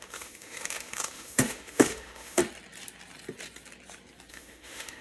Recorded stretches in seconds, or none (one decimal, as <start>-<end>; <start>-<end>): 2.4-4.3